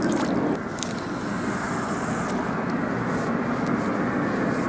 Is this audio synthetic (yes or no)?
no